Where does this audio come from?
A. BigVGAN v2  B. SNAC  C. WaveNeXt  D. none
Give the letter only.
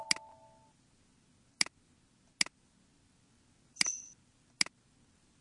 D